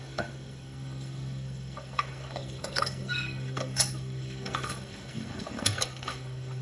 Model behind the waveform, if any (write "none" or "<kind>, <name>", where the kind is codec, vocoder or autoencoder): codec, SNAC